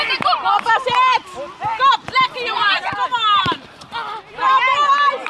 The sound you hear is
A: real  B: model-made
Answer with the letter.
A